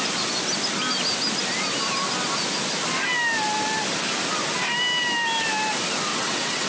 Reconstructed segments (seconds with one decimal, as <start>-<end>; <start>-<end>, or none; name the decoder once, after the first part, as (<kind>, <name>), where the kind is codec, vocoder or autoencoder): 6.1-6.7 (vocoder, WaveNeXt)